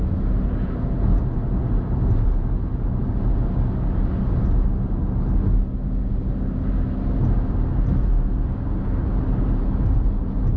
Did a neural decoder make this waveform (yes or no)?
no